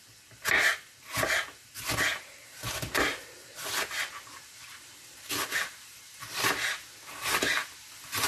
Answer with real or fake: real